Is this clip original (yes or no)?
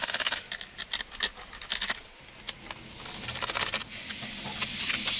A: yes